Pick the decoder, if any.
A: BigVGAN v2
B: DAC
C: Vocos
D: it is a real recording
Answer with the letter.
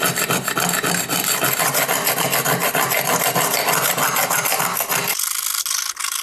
D